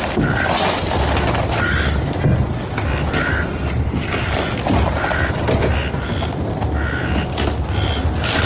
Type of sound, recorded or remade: recorded